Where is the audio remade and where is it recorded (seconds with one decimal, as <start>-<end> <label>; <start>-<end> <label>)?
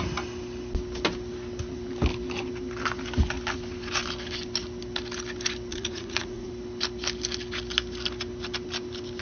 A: 0.0-5.7 recorded; 5.7-6.5 remade; 6.5-9.2 recorded